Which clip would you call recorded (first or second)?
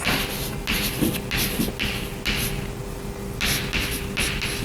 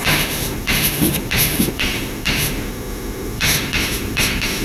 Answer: first